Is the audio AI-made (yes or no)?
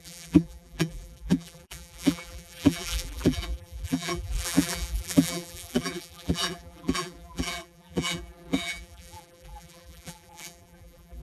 yes